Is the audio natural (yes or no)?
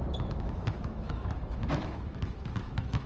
no